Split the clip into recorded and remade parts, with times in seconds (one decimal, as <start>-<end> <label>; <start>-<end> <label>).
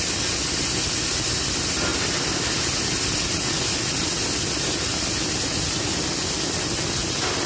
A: 0.0-7.5 recorded